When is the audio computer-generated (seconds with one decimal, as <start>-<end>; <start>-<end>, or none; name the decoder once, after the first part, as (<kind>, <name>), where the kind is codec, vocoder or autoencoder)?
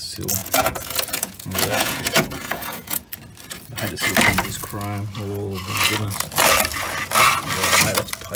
0.4-3.1 (vocoder, Vocos)